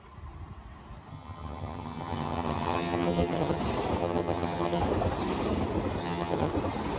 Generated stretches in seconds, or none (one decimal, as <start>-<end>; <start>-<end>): 1.1-3.6; 4.0-4.8; 6.0-6.5